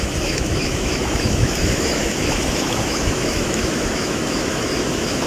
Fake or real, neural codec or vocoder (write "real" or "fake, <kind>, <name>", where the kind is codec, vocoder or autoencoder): fake, autoencoder, DAC-VAE